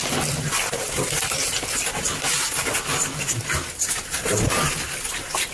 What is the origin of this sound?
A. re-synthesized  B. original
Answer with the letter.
B